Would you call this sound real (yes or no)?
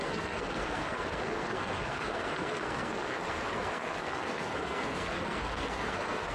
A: no